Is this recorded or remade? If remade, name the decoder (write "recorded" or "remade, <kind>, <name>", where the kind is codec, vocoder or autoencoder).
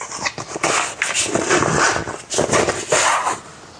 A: recorded